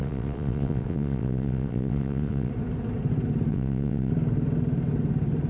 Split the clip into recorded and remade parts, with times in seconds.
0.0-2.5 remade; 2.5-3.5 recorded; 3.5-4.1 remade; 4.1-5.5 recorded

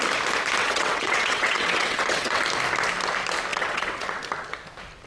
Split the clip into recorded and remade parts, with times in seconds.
0.0-0.6 recorded; 0.6-2.4 remade; 2.4-3.5 recorded; 3.5-4.2 remade; 4.2-5.1 recorded

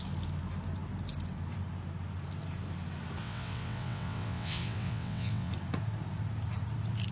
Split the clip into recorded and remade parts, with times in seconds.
0.0-3.2 recorded; 3.2-5.5 remade; 5.5-7.1 recorded

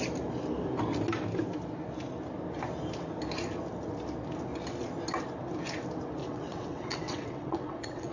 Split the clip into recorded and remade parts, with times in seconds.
0.0-6.2 recorded; 6.2-8.1 remade

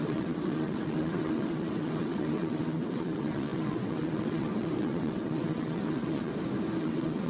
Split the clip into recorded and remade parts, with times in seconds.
0.0-6.3 remade; 6.3-6.8 recorded; 6.8-7.3 remade

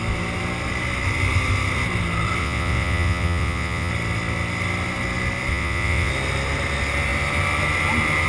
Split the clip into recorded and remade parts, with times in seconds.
0.0-2.4 recorded; 2.4-3.9 remade; 3.9-5.5 recorded; 5.5-6.1 remade; 6.1-8.3 recorded